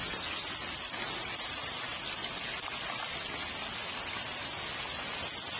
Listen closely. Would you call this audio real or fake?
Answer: real